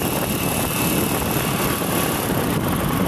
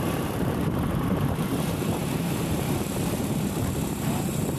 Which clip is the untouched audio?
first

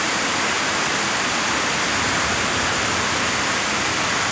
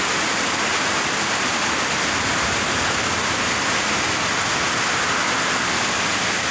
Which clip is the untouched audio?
second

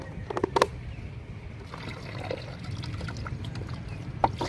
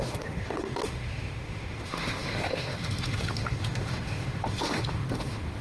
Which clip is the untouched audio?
first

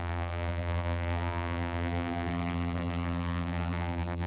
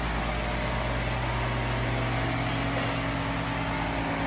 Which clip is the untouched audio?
second